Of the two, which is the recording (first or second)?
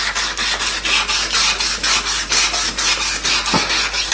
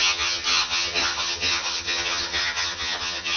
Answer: first